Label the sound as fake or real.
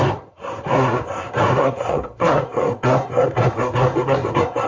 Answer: fake